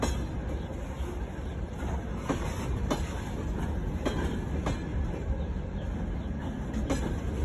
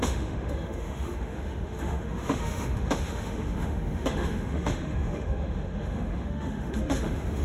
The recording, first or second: first